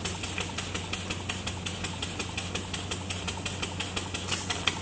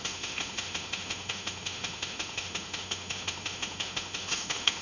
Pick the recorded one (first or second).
first